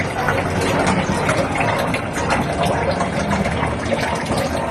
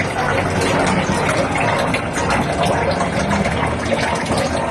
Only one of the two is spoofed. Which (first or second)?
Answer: first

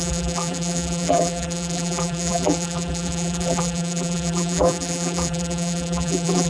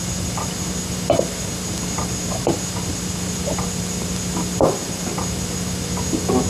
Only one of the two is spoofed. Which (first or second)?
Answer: first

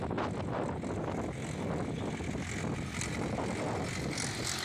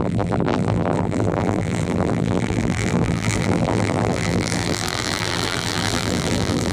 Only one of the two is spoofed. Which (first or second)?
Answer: second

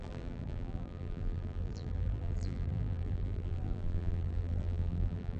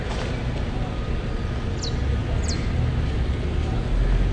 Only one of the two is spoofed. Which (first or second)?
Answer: first